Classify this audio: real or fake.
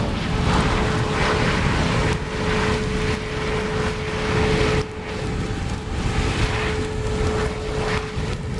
real